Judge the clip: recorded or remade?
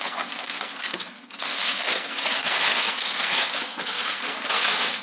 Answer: remade